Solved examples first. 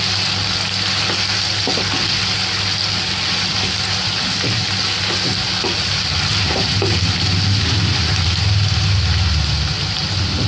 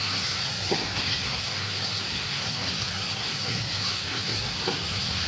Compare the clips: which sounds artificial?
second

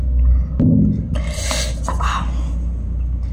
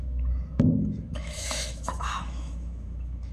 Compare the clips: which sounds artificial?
second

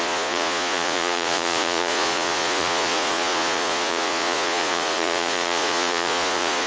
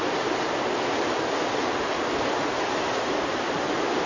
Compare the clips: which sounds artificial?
first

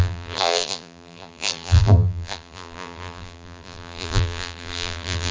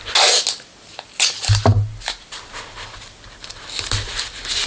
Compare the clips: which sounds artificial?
first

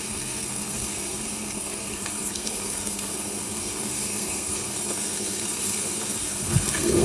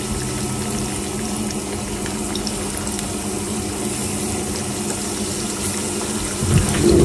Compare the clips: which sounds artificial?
first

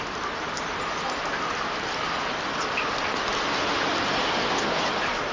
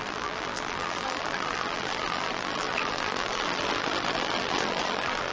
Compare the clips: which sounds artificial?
second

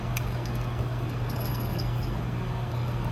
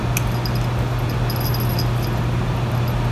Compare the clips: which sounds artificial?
first